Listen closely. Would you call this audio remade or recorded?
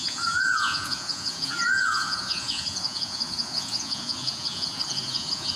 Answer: remade